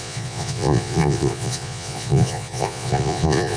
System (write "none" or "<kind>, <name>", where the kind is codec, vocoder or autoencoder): vocoder, Vocos